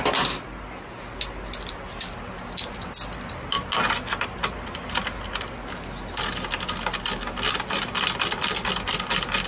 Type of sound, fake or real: real